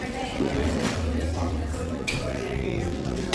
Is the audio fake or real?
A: fake